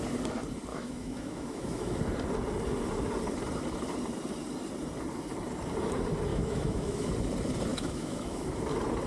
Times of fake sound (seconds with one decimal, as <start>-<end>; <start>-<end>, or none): 0.7-2.0; 6.3-7.1; 7.7-8.6